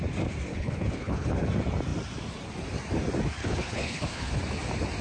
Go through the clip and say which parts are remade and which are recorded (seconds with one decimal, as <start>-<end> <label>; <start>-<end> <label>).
0.0-0.5 recorded; 0.5-1.3 remade; 1.3-3.4 recorded; 3.4-4.4 remade; 4.4-5.0 recorded